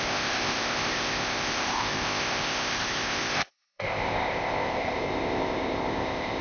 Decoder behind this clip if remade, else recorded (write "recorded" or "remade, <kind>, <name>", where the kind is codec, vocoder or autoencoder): remade, codec, ZipCodec